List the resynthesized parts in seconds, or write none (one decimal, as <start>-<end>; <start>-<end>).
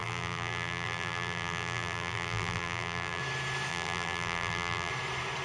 0.0-3.2; 3.7-4.9